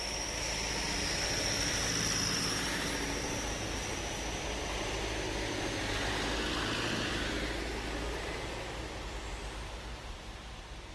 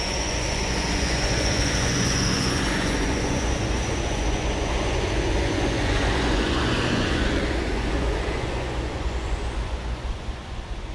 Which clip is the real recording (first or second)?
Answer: first